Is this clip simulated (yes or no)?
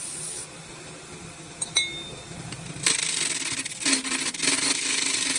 no